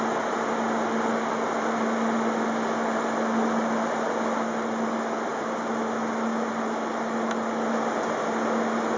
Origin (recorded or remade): recorded